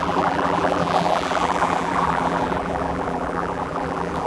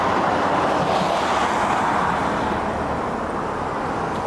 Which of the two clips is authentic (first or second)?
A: second